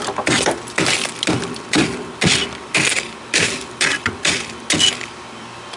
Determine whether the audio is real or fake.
real